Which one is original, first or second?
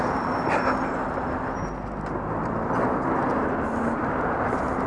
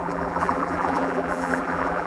first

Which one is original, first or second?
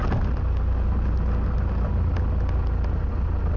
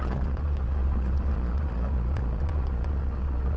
first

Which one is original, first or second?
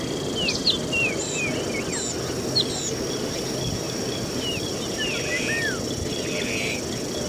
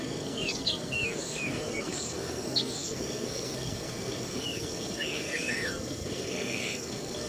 first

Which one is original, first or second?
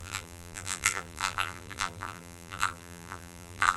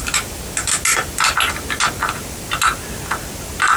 second